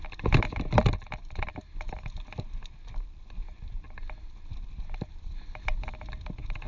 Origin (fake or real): fake